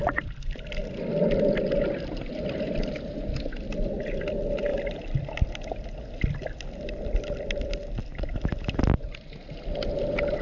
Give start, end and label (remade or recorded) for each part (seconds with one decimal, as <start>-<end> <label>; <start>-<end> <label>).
0.0-0.8 remade; 0.8-2.4 recorded; 2.4-4.7 remade; 4.7-6.3 recorded; 6.3-10.4 remade